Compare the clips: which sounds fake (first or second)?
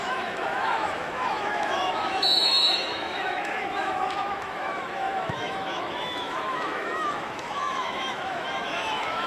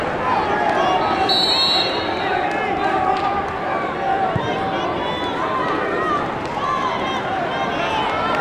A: first